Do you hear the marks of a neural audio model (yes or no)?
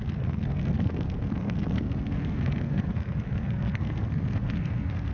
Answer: yes